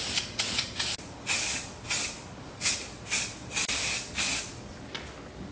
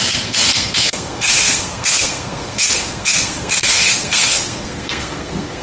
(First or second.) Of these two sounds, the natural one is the first